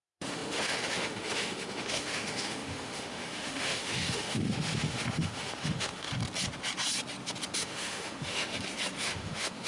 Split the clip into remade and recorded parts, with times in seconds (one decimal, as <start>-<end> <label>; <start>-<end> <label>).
0.0-6.1 remade; 6.1-7.6 recorded; 7.6-8.5 remade; 8.5-9.0 recorded; 9.0-9.7 remade

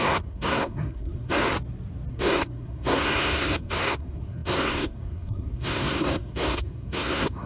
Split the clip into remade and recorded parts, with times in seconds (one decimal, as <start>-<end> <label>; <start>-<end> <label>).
0.0-1.3 remade; 1.3-2.1 recorded; 2.1-7.5 remade

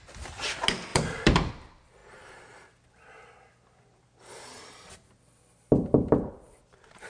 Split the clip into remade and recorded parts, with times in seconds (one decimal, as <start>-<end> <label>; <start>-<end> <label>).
0.0-0.9 recorded; 0.9-1.5 remade; 1.5-7.1 recorded